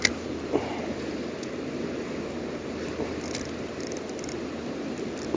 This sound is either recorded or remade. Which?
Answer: recorded